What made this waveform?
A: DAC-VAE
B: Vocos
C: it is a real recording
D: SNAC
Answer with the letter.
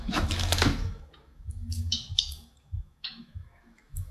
A